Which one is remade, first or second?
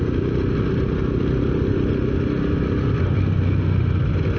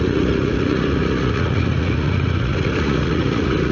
second